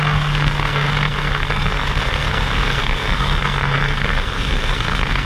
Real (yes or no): no